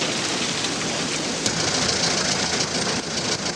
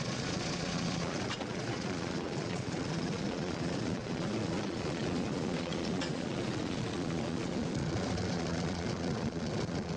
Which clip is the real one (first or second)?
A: first